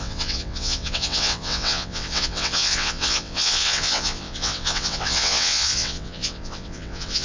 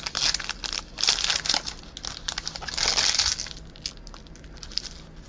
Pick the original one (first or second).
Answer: second